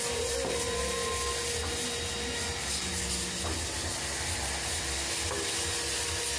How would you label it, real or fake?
real